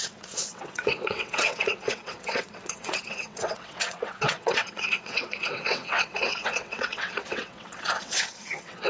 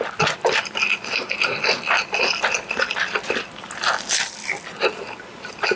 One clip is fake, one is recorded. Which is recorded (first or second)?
second